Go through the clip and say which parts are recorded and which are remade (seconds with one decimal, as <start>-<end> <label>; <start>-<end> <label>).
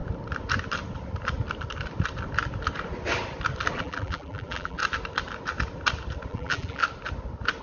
0.0-3.8 recorded; 3.8-4.8 remade; 4.8-6.3 recorded; 6.3-6.8 remade; 6.8-7.6 recorded